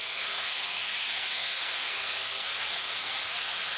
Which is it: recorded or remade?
remade